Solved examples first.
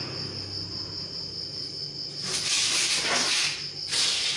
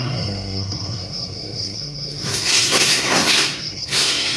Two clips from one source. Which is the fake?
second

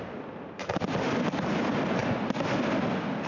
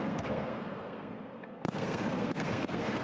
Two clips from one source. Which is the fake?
second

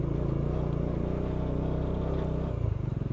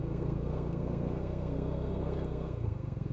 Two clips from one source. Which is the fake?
second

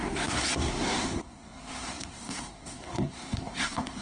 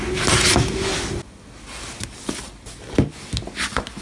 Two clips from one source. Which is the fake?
first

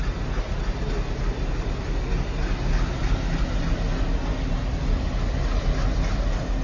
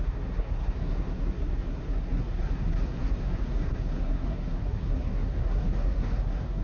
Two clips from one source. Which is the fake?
second